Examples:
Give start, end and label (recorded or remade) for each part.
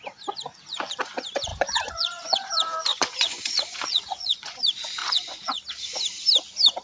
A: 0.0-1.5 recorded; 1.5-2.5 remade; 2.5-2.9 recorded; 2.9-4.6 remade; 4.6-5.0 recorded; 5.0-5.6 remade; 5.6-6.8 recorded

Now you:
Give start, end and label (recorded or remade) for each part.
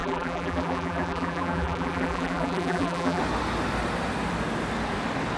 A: 0.0-3.2 remade; 3.2-5.4 recorded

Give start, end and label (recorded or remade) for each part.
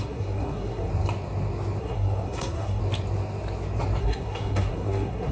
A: 0.0-0.9 remade; 0.9-1.8 recorded; 1.8-2.8 remade; 2.8-4.0 recorded; 4.0-5.3 remade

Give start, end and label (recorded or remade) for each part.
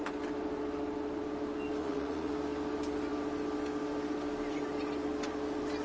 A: 0.0-1.8 recorded; 1.8-2.3 remade; 2.3-5.8 recorded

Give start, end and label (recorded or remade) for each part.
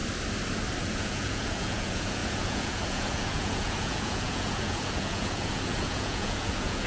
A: 0.0-0.8 recorded; 0.8-6.9 remade